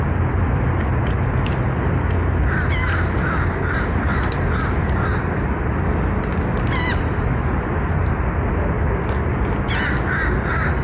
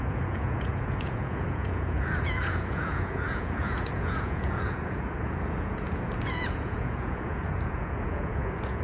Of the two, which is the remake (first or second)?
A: second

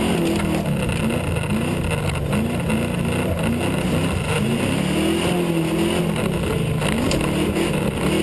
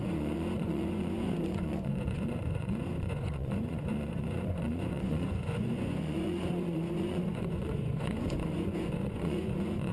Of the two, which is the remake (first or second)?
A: second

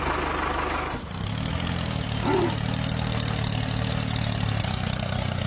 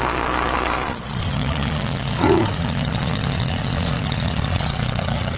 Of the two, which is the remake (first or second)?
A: second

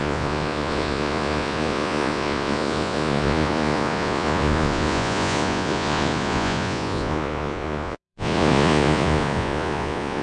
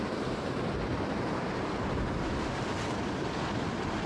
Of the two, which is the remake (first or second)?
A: first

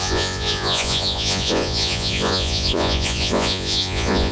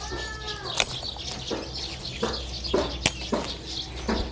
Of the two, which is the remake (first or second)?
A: first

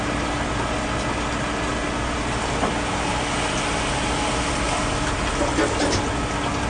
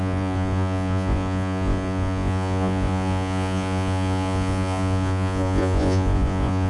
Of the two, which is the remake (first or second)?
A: second